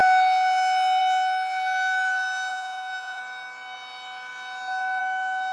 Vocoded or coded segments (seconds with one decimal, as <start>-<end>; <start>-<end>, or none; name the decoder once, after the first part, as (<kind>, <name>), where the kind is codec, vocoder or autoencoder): 2.5-3.2 (vocoder, Vocos)